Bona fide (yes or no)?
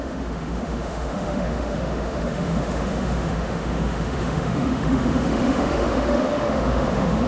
no